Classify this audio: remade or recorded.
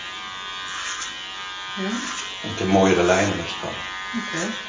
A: recorded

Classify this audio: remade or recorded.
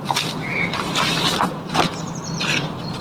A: remade